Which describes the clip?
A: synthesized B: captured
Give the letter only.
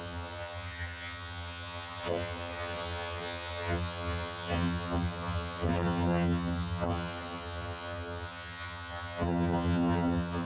A